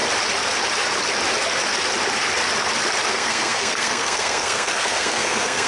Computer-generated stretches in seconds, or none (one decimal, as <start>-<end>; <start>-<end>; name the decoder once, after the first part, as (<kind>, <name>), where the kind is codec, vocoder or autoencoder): 3.1-5.7 (codec, SNAC)